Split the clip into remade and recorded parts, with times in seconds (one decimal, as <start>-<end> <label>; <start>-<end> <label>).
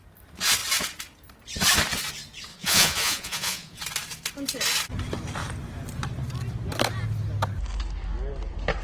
0.0-2.5 recorded; 2.5-3.8 remade; 3.8-8.8 recorded